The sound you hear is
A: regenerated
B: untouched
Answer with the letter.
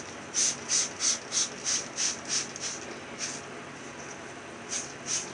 B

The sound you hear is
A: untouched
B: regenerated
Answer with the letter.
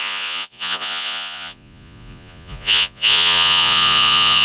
B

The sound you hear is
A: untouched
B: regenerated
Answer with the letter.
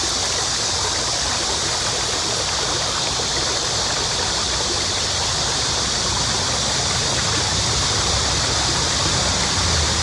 A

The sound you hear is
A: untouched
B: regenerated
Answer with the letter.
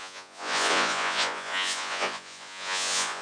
B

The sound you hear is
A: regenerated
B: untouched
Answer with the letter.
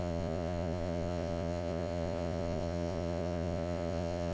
A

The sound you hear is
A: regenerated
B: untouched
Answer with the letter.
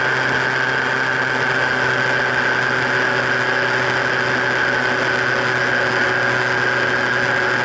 B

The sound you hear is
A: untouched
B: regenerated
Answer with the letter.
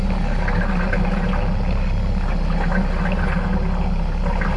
A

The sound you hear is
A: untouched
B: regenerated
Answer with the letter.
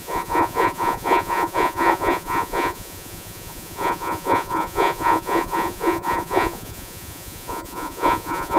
B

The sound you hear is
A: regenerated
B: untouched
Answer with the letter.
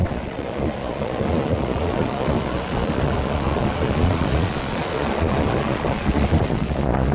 A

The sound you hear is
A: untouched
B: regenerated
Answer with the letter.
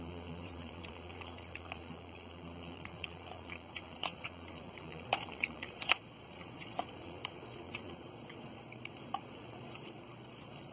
B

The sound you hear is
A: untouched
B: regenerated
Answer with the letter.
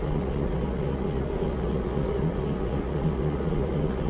B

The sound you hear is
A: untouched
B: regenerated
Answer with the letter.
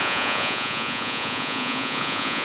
B